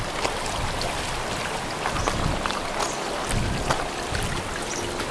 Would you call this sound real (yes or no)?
yes